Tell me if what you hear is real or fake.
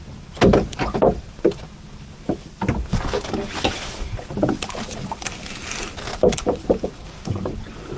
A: real